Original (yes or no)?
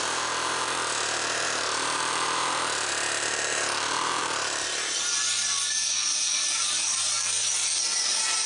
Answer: no